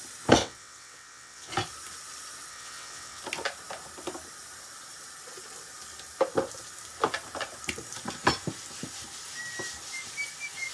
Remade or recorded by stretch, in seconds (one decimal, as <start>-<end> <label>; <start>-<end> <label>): 0.0-0.4 recorded; 0.4-1.5 remade; 1.5-2.5 recorded; 2.5-3.2 remade; 3.2-10.7 recorded

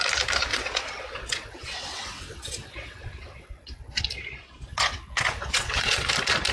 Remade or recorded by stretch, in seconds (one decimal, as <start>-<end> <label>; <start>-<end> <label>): 0.0-0.5 recorded; 0.5-4.0 remade; 4.0-4.7 recorded; 4.7-6.1 remade; 6.1-6.5 recorded

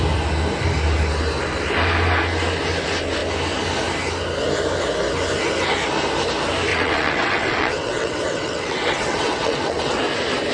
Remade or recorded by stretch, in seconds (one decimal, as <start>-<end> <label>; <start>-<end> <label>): 0.0-6.7 recorded; 6.7-10.0 remade; 10.0-10.5 recorded

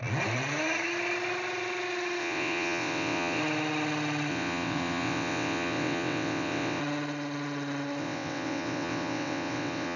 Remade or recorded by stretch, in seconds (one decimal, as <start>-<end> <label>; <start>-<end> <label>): 0.0-2.2 recorded; 2.2-3.4 remade; 3.4-4.3 recorded; 4.3-6.8 remade; 6.8-8.0 recorded; 8.0-10.0 remade